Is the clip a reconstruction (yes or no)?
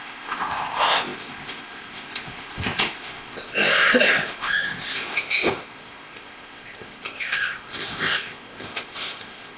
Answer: yes